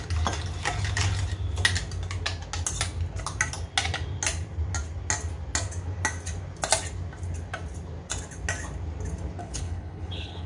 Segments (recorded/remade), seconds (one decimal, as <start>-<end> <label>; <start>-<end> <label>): 0.0-9.4 recorded; 9.4-10.5 remade